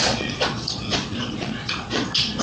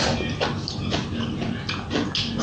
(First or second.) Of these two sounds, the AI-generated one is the first